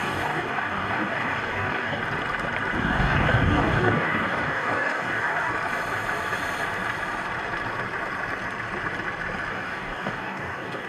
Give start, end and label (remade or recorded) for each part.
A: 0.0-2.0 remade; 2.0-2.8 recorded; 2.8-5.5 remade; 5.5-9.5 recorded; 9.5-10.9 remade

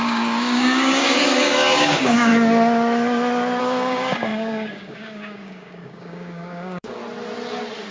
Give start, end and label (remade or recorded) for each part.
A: 0.0-2.3 remade; 2.3-3.6 recorded; 3.6-7.0 remade; 7.0-7.9 recorded

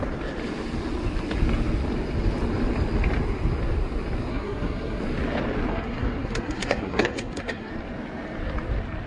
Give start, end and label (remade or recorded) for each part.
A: 0.0-4.3 recorded; 4.3-5.0 remade; 5.0-5.7 recorded; 5.7-7.7 remade; 7.7-9.1 recorded

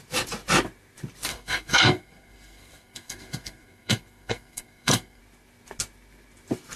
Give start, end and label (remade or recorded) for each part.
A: 0.0-1.3 recorded; 1.3-5.2 remade; 5.2-6.8 recorded

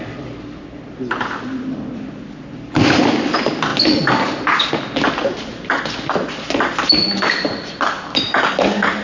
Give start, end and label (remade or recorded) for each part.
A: 0.0-9.0 recorded

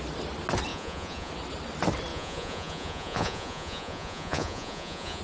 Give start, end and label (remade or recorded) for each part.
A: 0.0-0.7 recorded; 0.7-1.3 remade; 1.3-2.1 recorded; 2.1-5.2 remade

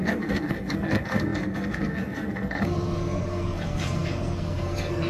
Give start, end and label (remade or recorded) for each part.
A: 0.0-5.1 remade